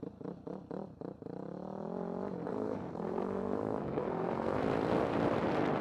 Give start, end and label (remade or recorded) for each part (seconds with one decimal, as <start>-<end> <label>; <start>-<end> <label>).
0.0-2.5 recorded; 2.5-4.6 remade; 4.6-5.8 recorded